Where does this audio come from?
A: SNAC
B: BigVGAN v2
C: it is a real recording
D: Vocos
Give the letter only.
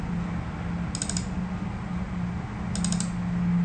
C